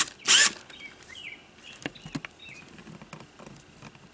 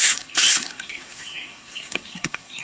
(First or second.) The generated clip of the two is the second